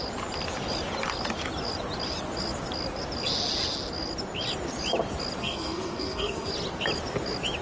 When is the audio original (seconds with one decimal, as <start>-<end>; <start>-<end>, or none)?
0.0-5.4; 6.5-7.6